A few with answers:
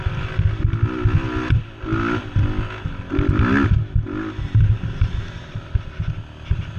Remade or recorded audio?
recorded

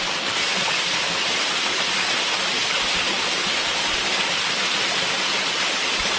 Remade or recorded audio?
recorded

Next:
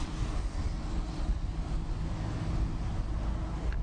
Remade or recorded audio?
recorded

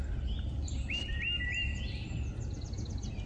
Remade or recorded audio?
recorded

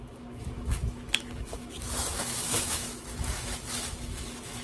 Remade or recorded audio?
remade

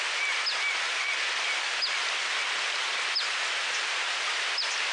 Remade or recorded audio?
recorded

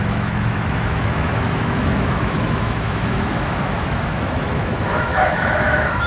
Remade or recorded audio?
remade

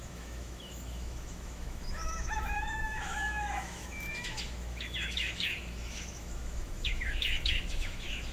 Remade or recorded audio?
remade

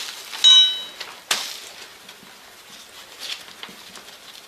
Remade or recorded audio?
recorded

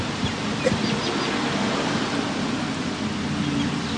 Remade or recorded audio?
recorded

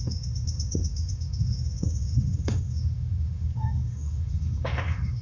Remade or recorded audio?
remade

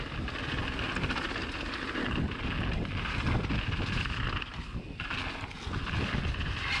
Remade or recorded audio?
recorded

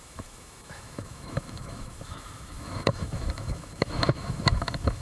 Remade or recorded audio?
remade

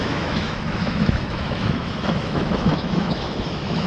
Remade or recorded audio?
remade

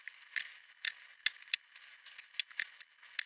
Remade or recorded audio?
recorded